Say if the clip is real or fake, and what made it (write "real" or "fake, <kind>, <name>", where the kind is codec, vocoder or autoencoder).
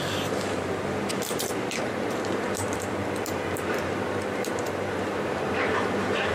fake, vocoder, BigVGAN v2